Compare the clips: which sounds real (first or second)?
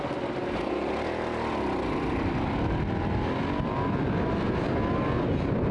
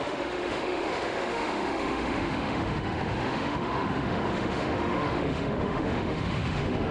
first